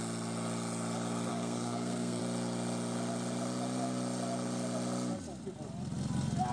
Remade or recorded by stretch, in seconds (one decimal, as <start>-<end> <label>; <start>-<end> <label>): 0.0-1.3 recorded; 1.3-2.2 remade; 2.2-6.5 recorded